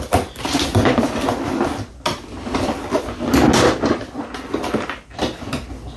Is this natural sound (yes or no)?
yes